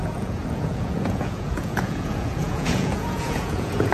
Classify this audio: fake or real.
fake